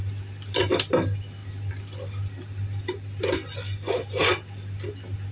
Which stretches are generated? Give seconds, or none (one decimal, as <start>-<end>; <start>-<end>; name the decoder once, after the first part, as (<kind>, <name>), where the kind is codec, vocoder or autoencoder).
none